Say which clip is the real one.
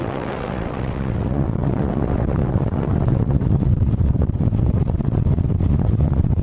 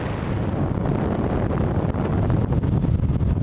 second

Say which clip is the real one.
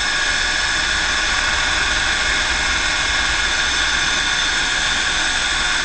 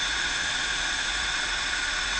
first